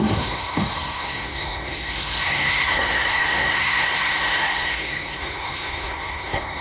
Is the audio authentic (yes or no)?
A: no